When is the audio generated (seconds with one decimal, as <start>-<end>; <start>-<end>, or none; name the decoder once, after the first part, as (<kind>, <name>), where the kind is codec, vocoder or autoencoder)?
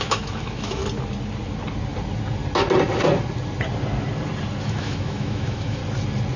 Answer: 0.0-0.8 (autoencoder, DAC-VAE); 4.6-5.8